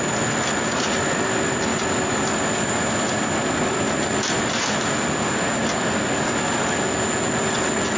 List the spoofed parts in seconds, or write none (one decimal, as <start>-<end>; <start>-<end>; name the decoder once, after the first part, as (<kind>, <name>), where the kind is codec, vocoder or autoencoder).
none